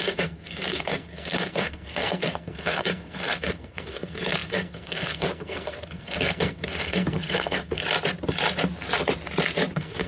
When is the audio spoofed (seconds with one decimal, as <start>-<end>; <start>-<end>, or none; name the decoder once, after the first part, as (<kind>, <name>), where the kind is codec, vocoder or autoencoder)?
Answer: 0.0-7.8 (codec, SNAC); 9.7-10.1